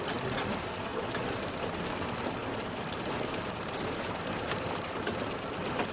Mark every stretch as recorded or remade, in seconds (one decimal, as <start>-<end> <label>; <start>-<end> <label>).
0.0-0.9 recorded; 0.9-1.6 remade; 1.6-2.4 recorded; 2.4-5.4 remade; 5.4-5.9 recorded